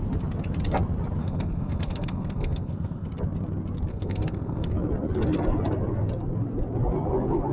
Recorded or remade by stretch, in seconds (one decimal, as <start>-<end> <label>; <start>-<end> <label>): 0.0-1.2 recorded; 1.2-3.1 remade; 3.1-3.9 recorded; 3.9-4.7 remade; 4.7-7.5 recorded